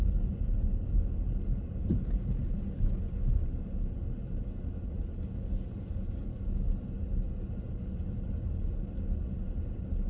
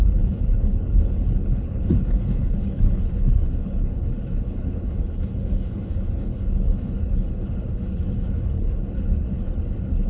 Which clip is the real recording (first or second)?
first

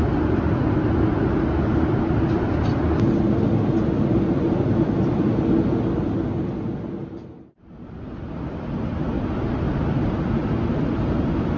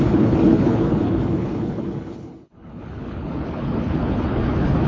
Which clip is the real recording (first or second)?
first